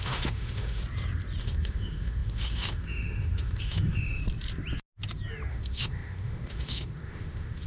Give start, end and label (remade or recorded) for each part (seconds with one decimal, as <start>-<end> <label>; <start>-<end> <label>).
0.0-0.8 remade; 0.8-1.4 recorded; 1.4-4.2 remade; 4.2-5.5 recorded; 5.5-7.7 remade